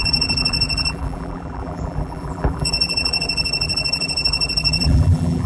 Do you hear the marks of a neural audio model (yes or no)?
yes